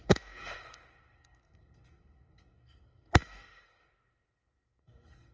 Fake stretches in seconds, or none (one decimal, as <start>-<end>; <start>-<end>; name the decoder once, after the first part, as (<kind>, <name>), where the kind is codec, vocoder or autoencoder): 0.0-5.3 (codec, SNAC)